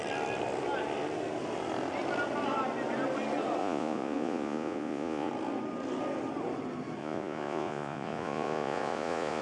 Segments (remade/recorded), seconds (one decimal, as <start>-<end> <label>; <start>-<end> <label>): 0.0-3.6 recorded; 3.6-5.3 remade; 5.3-7.0 recorded; 7.0-9.4 remade